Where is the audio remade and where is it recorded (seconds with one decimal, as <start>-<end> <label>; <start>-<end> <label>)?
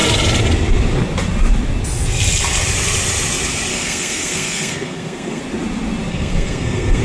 0.0-3.7 recorded; 3.7-5.4 remade; 5.4-6.1 recorded; 6.1-7.0 remade